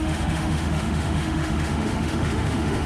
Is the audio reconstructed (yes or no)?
yes